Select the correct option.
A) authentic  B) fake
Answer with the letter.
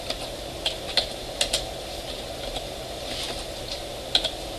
A